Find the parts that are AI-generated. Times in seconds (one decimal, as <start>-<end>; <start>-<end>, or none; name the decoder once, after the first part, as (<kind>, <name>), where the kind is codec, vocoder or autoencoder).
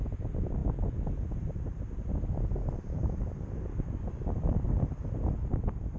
3.0-4.1 (vocoder, BigVGAN v2)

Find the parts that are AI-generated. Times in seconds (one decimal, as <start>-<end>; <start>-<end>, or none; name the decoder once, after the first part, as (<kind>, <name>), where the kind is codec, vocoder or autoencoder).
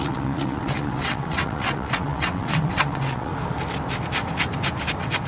0.0-3.3 (vocoder, WaveNeXt)